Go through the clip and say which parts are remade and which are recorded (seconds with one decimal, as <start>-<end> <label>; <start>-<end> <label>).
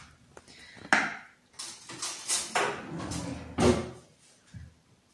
0.0-5.1 recorded